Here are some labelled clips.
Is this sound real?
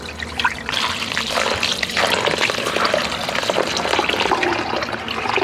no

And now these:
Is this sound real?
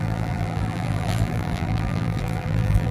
no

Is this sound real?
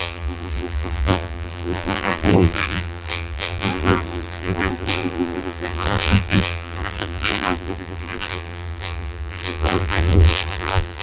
no